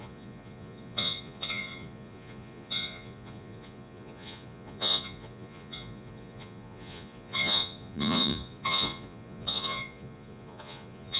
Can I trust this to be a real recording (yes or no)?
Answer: no